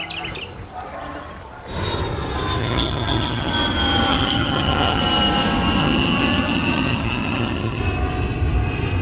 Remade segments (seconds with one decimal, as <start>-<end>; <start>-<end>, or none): 2.6-3.5; 4.1-5.0; 5.8-7.8